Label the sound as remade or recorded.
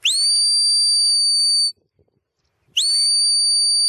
recorded